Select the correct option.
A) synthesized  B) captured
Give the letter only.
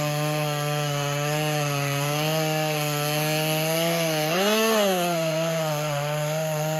A